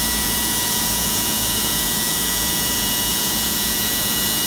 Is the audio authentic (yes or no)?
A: no